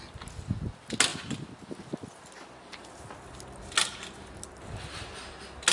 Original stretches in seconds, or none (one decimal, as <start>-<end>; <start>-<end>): 0.0-5.7